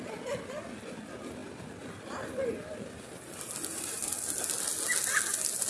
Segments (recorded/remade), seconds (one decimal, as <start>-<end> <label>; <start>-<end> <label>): 0.0-5.7 recorded